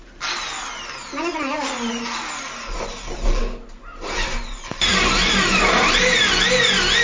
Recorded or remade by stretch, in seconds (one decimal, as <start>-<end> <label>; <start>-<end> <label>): 0.0-1.3 recorded; 1.3-2.2 remade; 2.2-2.9 recorded; 2.9-3.4 remade; 3.4-4.9 recorded; 4.9-6.3 remade; 6.3-7.0 recorded